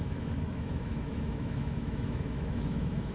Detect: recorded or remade remade